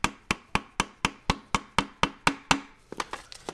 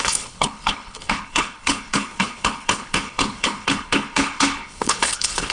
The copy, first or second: second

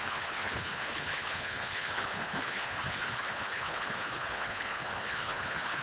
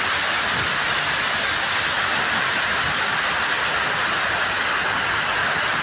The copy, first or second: first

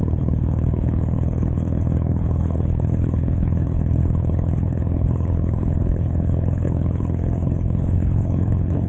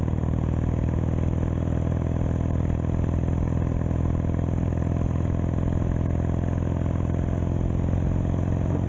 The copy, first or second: first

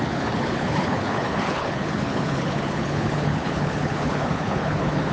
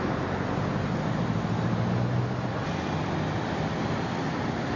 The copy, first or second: first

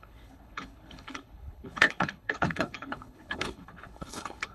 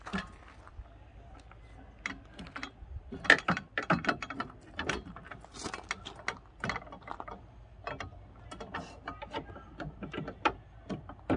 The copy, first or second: first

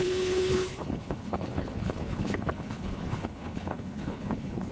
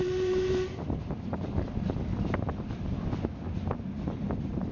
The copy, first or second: first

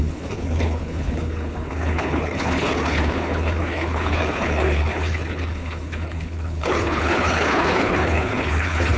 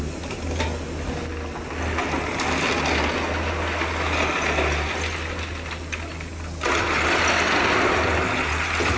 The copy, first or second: first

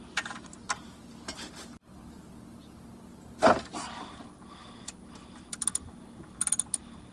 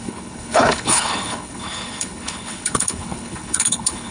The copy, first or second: second